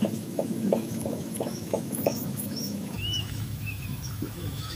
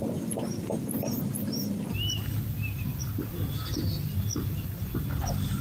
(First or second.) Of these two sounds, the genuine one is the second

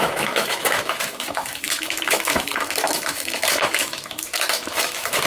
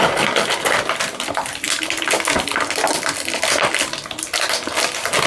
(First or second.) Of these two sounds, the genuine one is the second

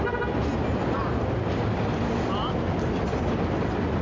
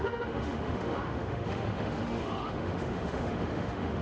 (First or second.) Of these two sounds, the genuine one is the first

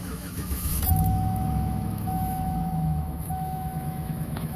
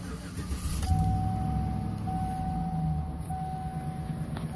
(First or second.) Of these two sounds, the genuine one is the second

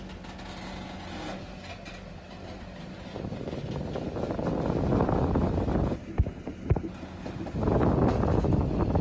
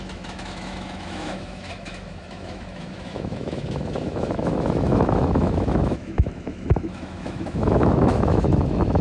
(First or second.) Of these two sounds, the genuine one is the first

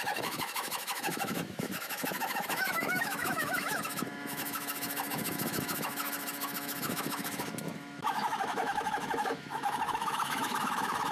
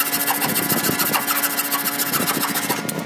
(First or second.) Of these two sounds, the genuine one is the second